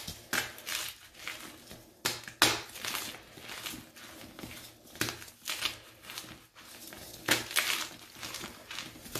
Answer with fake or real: real